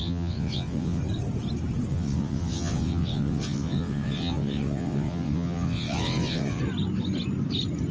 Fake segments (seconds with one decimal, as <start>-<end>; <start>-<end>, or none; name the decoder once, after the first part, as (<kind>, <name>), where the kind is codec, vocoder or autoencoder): 0.0-1.0 (vocoder, WaveNeXt); 1.9-6.6